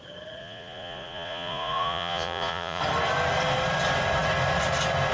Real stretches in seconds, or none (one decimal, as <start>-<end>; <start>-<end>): 0.0-0.4; 2.8-5.1